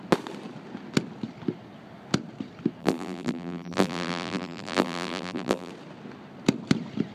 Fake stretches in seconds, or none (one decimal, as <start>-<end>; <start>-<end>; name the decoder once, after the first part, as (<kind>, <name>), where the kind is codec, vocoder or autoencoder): 2.8-5.7 (vocoder, BigVGAN v2)

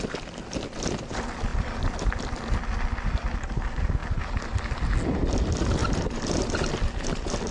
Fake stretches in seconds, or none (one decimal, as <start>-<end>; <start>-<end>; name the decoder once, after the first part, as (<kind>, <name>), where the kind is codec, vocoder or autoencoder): 5.8-6.4 (vocoder, BigVGAN v2)

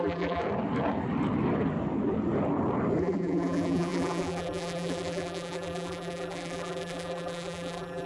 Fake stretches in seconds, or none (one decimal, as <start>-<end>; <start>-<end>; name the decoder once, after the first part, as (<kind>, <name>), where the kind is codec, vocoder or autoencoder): 0.0-0.4 (vocoder, BigVGAN v2); 3.0-8.1

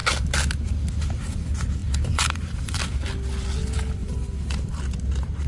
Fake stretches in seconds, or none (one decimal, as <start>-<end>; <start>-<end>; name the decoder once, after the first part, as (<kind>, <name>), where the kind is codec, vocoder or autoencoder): 1.8-2.8 (vocoder, BigVGAN v2); 4.0-4.8